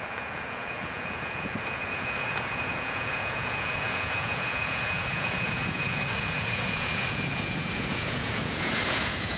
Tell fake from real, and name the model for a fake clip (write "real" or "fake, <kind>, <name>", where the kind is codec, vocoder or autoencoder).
fake, vocoder, Vocos